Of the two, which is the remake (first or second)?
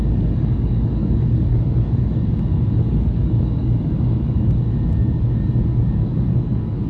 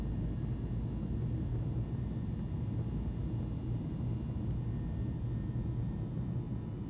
first